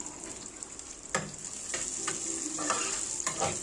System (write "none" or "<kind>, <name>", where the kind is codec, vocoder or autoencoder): none